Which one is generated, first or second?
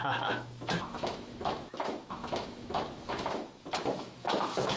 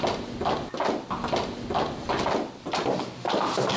first